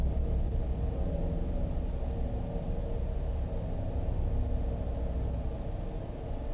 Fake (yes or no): no